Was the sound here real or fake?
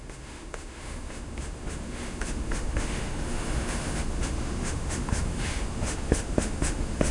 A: fake